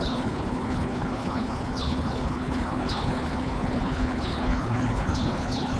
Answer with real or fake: fake